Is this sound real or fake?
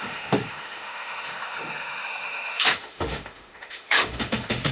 fake